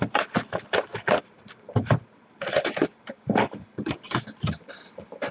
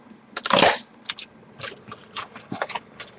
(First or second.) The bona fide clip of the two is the second